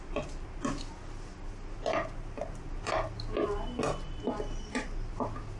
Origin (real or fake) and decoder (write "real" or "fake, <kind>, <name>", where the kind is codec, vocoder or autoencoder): real